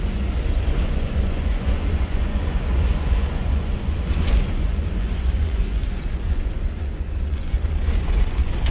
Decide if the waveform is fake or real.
fake